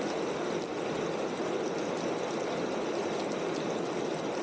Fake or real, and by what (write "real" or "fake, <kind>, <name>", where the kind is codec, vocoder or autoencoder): real